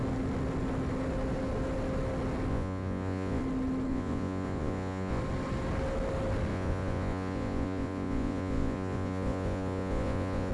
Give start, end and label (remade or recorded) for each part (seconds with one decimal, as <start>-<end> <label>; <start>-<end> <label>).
0.0-2.5 recorded; 2.5-3.4 remade; 3.4-3.9 recorded; 3.9-5.2 remade; 5.2-6.5 recorded; 6.5-10.5 remade